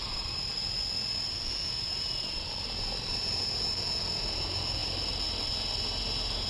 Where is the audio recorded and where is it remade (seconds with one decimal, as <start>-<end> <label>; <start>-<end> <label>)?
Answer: 0.0-3.6 remade; 3.6-4.8 recorded; 4.8-5.5 remade; 5.5-6.5 recorded